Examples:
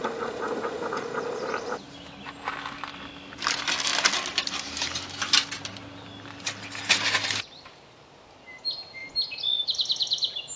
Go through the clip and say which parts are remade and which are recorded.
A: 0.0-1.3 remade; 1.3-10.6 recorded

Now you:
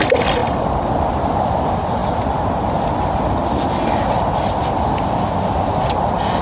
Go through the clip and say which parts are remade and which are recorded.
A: 0.0-6.4 recorded

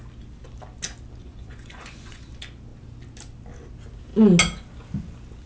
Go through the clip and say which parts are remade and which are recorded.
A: 0.0-1.2 recorded; 1.2-2.3 remade; 2.3-5.5 recorded

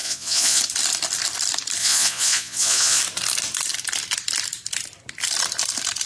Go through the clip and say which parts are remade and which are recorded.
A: 0.0-0.6 remade; 0.6-1.8 recorded; 1.8-3.0 remade; 3.0-6.1 recorded